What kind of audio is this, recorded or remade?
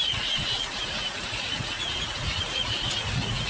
remade